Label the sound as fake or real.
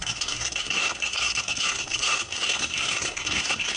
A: fake